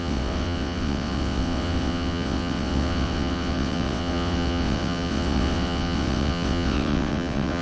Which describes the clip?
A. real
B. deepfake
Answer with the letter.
B